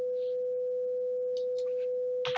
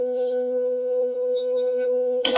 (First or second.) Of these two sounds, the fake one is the second